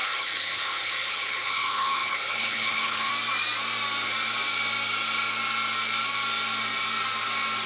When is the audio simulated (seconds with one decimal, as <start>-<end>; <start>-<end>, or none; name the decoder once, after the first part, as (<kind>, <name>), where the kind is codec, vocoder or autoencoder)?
0.0-3.1 (codec, HILCodec)